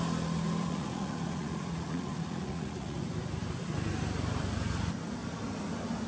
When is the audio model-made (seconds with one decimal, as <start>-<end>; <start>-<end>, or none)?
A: 0.6-3.0